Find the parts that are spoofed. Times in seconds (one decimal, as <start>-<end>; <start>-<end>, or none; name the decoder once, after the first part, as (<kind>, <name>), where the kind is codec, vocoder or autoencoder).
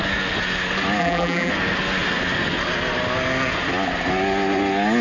1.0-1.5 (vocoder, BigVGAN v2)